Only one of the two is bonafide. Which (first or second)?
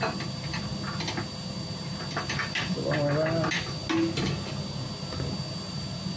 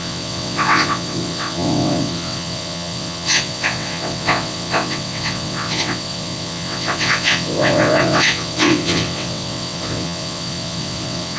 first